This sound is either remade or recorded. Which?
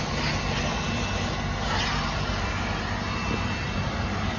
recorded